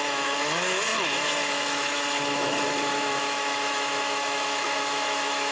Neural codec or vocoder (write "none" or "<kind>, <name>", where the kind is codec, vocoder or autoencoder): autoencoder, DAC-VAE